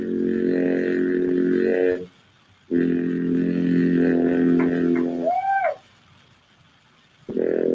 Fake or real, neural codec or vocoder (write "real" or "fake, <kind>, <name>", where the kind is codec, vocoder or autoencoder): real